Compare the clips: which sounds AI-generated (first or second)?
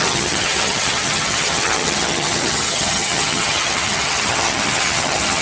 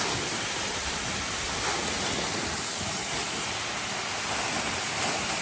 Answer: first